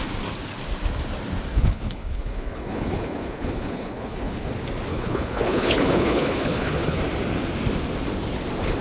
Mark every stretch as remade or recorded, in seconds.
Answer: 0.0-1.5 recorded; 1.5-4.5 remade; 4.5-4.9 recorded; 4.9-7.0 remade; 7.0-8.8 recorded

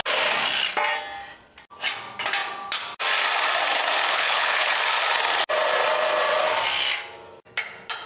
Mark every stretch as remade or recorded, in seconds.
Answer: 0.0-4.1 recorded; 4.1-4.8 remade; 4.8-8.1 recorded

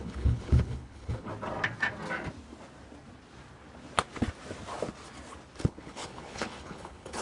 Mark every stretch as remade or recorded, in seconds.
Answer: 0.0-1.3 remade; 1.3-5.6 recorded; 5.6-7.2 remade